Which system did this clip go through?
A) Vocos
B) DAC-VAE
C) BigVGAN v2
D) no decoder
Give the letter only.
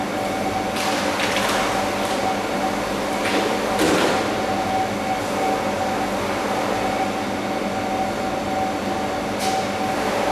D